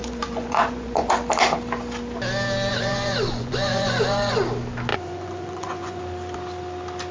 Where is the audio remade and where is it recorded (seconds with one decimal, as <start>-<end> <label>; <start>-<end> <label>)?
0.0-1.1 remade; 1.1-2.7 recorded; 2.7-4.4 remade; 4.4-4.9 recorded; 4.9-6.0 remade; 6.0-7.1 recorded